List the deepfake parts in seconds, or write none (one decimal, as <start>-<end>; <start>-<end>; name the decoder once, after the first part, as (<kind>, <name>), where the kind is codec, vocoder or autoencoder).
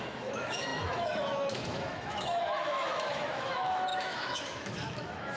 0.0-5.4 (autoencoder, DAC-VAE)